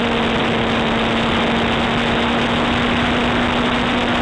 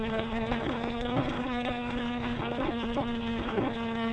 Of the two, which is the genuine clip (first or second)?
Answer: first